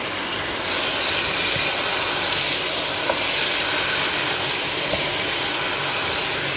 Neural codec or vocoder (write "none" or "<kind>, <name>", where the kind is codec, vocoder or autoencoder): none